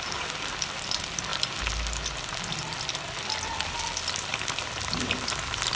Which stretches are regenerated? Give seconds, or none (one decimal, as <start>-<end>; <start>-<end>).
none